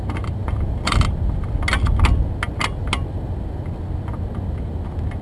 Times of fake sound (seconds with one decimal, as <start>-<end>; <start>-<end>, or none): 0.4-1.1